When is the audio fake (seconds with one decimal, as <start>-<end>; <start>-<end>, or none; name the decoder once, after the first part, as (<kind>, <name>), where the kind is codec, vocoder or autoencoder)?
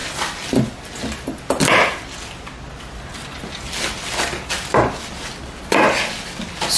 none